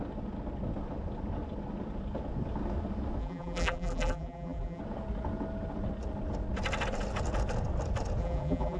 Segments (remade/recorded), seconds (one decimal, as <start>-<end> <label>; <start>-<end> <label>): 0.0-3.2 recorded; 3.2-4.8 remade; 4.8-8.2 recorded; 8.2-8.8 remade